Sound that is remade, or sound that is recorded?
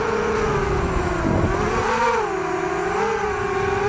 recorded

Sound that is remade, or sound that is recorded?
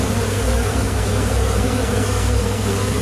remade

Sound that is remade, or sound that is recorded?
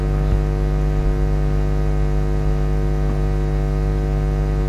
recorded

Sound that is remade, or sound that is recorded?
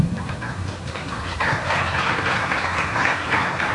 remade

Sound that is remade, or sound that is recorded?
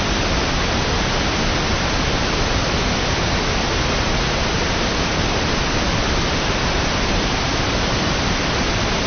recorded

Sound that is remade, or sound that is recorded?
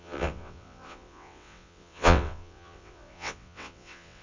remade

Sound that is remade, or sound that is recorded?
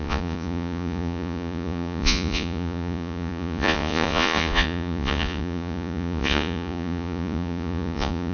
remade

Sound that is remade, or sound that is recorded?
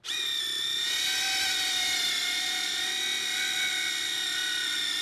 recorded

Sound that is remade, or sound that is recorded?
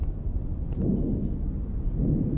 recorded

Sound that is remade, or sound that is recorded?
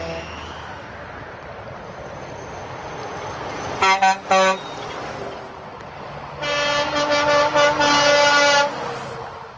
recorded